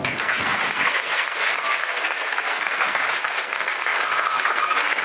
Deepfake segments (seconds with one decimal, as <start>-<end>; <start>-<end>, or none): 0.0-5.0